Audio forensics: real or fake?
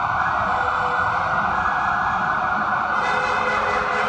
real